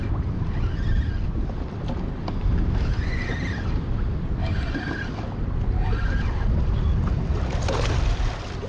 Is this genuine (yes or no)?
yes